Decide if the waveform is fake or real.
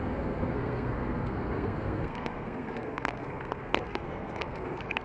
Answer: fake